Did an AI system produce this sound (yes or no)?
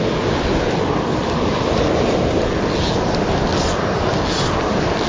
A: no